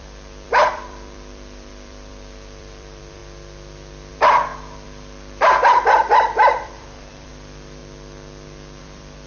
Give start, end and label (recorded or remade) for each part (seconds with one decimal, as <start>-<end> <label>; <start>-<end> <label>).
0.0-3.2 remade; 3.2-4.1 recorded; 4.1-7.8 remade; 7.8-8.8 recorded; 8.8-9.3 remade